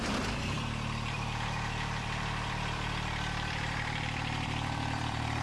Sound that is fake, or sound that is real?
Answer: fake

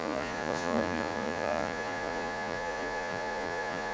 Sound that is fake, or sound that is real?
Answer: fake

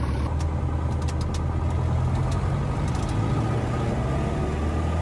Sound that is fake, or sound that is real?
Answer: real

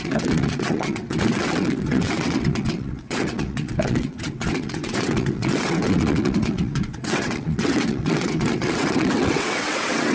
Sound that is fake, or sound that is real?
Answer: fake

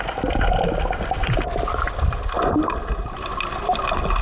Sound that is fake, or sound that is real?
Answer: real